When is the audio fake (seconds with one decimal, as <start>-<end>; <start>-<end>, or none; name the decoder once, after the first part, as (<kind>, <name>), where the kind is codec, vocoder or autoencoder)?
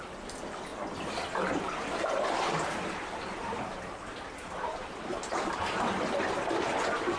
none